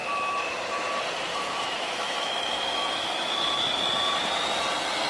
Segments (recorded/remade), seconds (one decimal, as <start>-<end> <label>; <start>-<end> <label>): 0.0-0.9 remade; 0.9-1.3 recorded; 1.3-3.7 remade; 3.7-5.1 recorded